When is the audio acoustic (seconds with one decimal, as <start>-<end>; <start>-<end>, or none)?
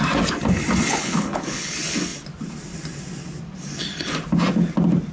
0.0-0.9; 1.7-5.1